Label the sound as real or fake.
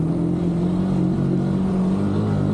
real